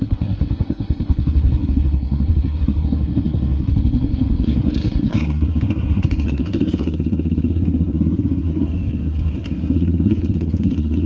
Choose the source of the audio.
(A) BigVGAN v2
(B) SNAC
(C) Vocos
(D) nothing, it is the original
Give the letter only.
B